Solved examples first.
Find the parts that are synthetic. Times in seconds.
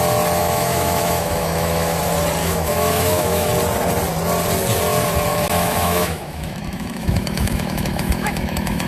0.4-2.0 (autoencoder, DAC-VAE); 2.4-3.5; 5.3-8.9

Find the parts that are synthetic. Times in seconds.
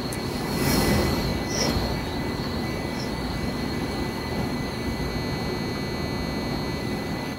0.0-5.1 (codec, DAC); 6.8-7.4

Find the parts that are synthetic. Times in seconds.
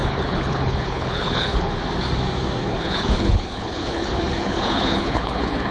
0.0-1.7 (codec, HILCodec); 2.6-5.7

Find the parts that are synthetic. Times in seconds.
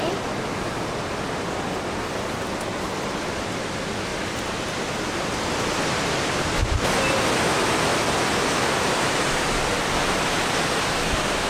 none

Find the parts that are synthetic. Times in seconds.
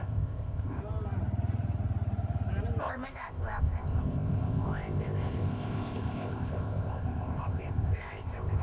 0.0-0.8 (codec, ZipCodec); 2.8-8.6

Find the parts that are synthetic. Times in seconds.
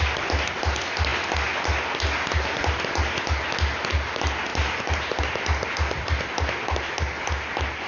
4.5-5.2 (vocoder, BigVGAN v2)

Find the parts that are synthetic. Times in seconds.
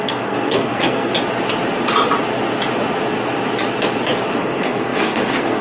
0.0-1.1 (codec, SNAC); 4.4-5.6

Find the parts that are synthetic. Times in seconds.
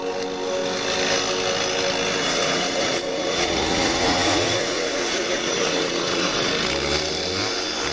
2.2-6.5 (vocoder, Vocos)